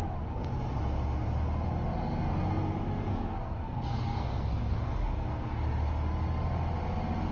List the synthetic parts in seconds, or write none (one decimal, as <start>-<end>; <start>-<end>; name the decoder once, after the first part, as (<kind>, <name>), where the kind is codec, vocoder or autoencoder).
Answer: 3.1-5.6 (codec, SNAC)